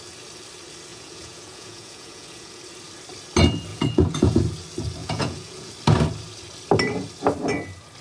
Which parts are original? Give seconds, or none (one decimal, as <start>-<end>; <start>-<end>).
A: 0.0-0.9; 2.6-3.7; 4.4-5.0; 5.7-8.0